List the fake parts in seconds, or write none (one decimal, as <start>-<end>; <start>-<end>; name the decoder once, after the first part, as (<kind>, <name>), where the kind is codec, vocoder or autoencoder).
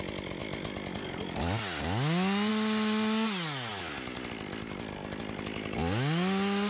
none